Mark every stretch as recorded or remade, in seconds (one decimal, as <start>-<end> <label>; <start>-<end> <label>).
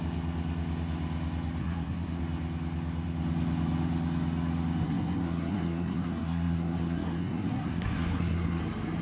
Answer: 0.0-1.6 recorded; 1.6-2.2 remade; 2.2-4.8 recorded; 4.8-8.6 remade; 8.6-9.0 recorded